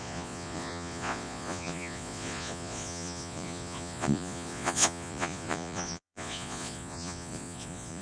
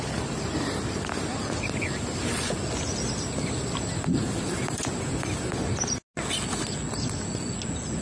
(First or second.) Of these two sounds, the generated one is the first